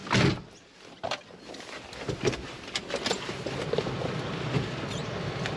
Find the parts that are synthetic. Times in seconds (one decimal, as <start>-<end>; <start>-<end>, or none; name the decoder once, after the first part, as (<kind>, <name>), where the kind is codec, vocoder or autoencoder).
none